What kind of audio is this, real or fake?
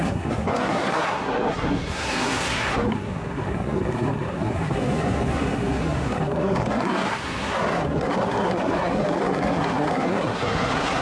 fake